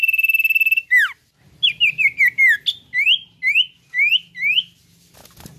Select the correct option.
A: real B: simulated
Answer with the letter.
A